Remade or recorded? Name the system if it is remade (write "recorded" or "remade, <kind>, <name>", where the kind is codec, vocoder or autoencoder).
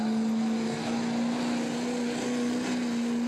recorded